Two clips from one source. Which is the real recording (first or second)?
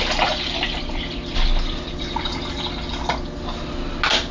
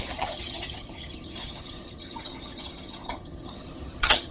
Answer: first